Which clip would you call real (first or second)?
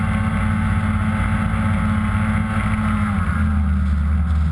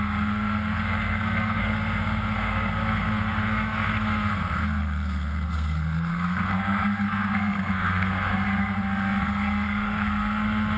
first